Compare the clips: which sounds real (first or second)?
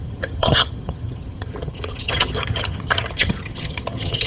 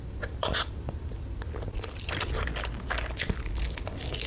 second